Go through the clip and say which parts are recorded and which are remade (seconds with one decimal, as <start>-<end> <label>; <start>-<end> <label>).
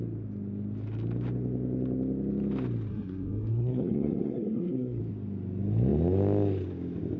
0.0-2.9 recorded; 2.9-5.0 remade; 5.0-7.2 recorded